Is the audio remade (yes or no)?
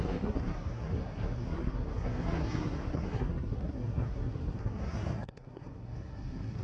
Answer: yes